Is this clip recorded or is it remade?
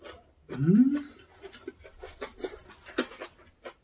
recorded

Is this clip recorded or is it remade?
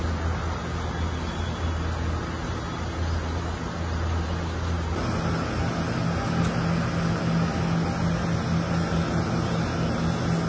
recorded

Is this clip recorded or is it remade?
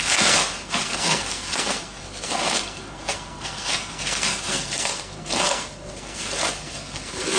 remade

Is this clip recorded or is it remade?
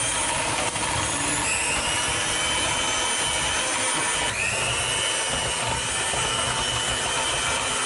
recorded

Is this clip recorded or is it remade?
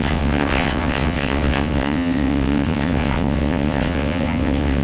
remade